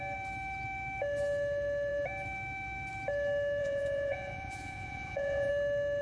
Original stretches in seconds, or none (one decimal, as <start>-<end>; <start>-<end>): 0.0-3.6; 5.5-6.0